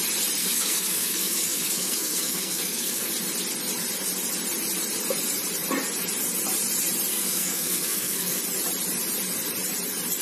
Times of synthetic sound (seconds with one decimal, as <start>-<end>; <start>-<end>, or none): 0.4-3.1; 7.1-8.4